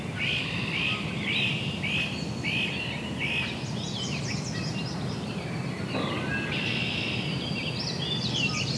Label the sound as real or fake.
real